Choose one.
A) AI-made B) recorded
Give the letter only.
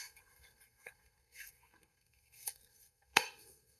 A